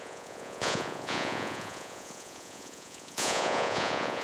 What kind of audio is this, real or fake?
fake